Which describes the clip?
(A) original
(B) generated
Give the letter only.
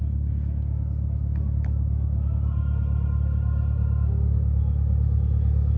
A